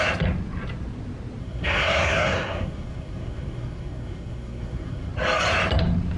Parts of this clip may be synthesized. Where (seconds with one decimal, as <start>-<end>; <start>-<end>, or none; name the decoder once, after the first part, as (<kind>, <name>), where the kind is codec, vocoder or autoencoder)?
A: 1.4-5.1 (codec, SNAC)